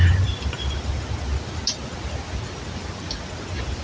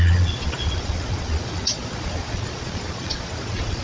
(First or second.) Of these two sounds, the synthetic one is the second